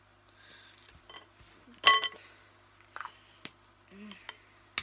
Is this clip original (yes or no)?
yes